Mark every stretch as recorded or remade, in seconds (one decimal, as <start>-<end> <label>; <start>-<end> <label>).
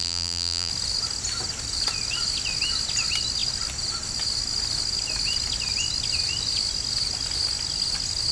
0.0-0.7 remade; 0.7-8.3 recorded